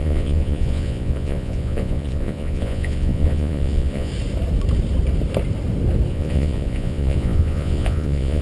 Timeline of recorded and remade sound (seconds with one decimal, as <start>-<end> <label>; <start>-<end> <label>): 0.0-4.1 remade; 4.1-6.1 recorded; 6.1-8.4 remade